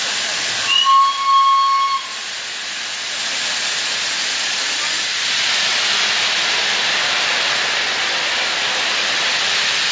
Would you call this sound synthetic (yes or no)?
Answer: no